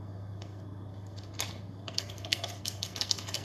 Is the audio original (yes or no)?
no